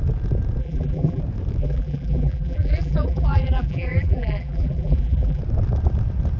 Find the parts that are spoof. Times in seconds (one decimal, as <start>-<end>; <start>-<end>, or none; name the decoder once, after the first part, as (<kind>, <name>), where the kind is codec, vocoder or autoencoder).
0.6-1.2 (vocoder, BigVGAN v2); 1.6-5.4